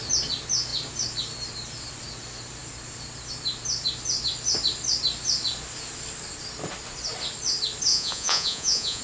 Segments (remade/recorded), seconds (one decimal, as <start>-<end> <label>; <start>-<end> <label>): 0.0-7.9 recorded; 7.9-9.0 remade